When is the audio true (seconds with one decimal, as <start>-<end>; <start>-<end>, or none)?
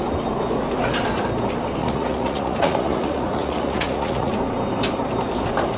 0.0-1.8; 4.3-5.8